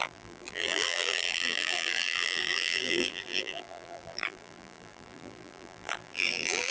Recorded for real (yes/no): no